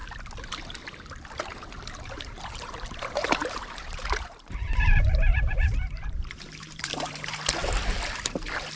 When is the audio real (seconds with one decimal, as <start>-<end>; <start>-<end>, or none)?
0.0-2.0; 7.6-8.8